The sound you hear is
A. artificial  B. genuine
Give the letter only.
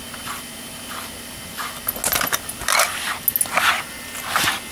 B